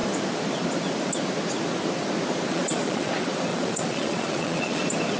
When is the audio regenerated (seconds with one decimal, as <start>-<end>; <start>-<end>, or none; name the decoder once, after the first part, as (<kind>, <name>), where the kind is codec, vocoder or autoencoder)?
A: 2.5-3.1 (vocoder, Vocos); 3.5-4.8